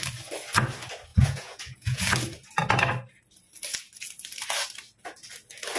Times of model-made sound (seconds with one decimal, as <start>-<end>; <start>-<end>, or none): 1.1-2.0